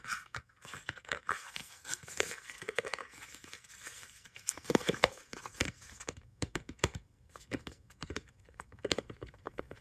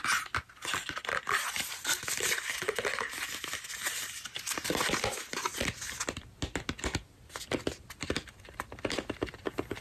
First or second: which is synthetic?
first